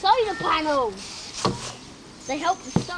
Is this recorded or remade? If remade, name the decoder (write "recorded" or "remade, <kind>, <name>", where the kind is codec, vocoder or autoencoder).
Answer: recorded